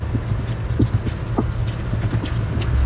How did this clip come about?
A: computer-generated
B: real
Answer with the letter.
B